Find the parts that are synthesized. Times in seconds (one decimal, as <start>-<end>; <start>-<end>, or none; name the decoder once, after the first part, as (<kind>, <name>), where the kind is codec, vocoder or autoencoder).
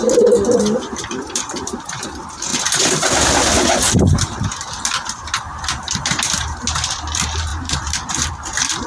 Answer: 0.0-2.5 (vocoder, BigVGAN v2); 4.1-8.9